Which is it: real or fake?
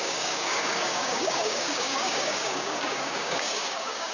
fake